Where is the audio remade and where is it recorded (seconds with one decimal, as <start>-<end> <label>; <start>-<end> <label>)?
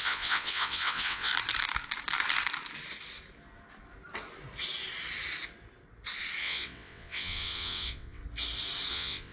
0.0-1.3 remade; 1.3-6.4 recorded; 6.4-8.2 remade; 8.2-8.9 recorded; 8.9-9.3 remade